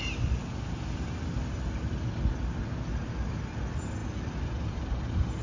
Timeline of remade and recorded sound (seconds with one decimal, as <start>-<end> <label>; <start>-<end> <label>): 0.0-5.4 recorded

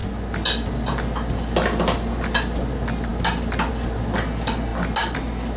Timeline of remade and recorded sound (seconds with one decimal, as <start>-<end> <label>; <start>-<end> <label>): 0.0-5.6 recorded

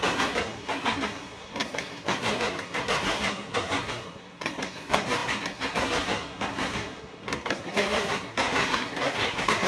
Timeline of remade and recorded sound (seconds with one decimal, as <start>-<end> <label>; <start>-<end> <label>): 0.0-9.7 remade